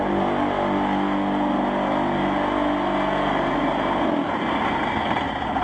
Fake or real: real